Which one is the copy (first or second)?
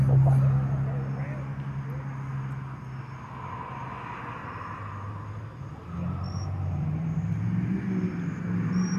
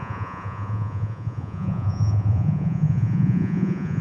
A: second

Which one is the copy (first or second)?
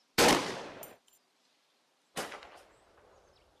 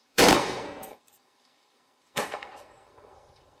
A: second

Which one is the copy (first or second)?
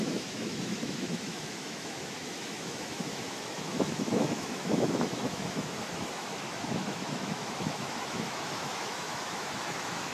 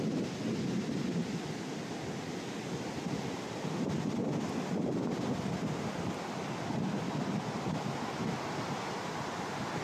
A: first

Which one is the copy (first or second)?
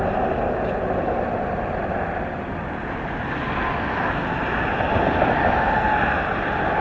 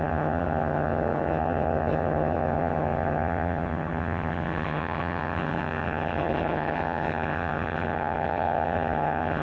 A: second